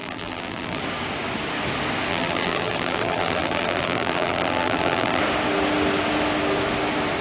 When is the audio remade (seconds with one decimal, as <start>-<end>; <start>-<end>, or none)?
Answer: 0.0-0.8; 2.1-5.2